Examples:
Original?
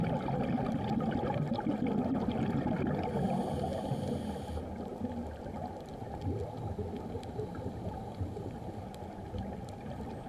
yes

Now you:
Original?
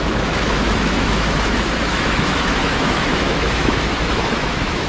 no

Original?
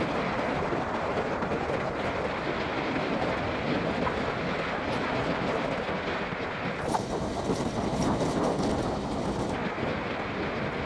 yes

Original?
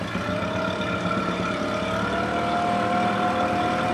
yes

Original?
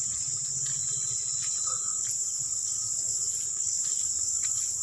yes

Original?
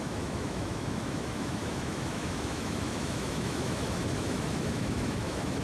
no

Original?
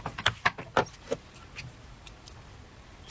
yes